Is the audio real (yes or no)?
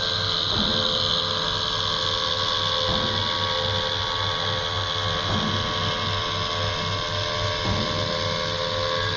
yes